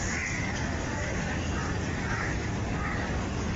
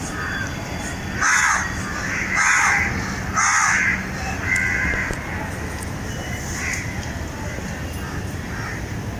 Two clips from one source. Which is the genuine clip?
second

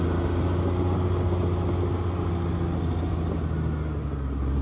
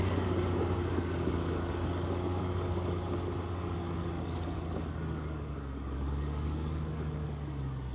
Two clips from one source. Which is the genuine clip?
first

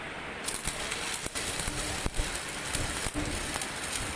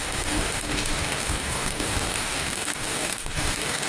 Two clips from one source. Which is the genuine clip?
first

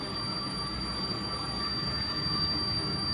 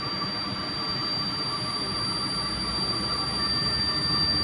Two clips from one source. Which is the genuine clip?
second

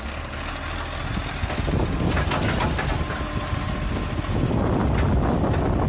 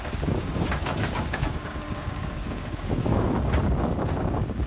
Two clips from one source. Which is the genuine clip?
first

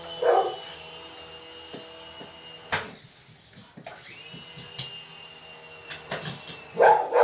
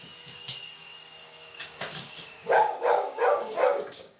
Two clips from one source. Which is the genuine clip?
first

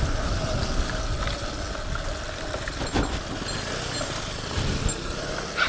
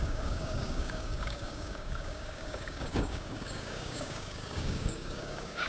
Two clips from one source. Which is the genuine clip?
first